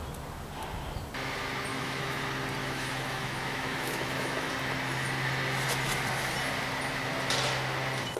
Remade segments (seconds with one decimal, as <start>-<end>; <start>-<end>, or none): 1.7-2.2; 2.6-4.5